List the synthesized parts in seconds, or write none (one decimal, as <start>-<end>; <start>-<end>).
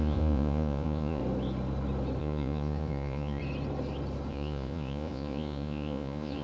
0.0-1.2; 2.2-3.4; 4.3-6.4